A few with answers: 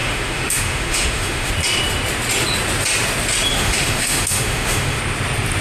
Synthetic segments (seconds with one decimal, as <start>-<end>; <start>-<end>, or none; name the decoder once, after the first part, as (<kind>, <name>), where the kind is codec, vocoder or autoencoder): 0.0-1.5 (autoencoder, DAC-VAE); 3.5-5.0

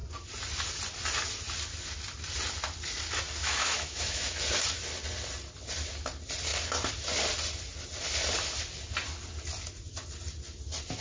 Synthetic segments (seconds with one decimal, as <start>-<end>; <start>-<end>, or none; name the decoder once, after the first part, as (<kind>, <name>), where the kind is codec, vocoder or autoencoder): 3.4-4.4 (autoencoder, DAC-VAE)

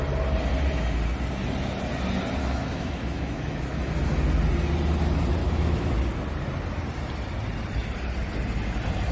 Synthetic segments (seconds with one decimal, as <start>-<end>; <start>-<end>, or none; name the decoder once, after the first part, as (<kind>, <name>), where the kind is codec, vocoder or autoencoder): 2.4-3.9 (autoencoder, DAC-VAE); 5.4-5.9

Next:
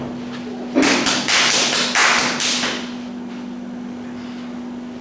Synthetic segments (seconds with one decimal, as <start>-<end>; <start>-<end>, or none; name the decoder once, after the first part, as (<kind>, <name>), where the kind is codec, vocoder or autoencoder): none

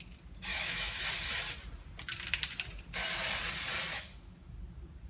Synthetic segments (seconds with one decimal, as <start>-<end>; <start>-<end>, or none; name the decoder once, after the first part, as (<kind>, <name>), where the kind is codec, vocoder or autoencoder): 0.5-1.1 (autoencoder, DAC-VAE); 3.9-4.5

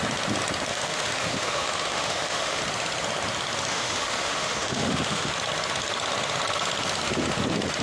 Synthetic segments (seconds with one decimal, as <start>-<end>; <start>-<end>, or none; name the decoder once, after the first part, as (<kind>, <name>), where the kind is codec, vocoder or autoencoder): 0.7-2.6 (autoencoder, DAC-VAE); 3.7-5.3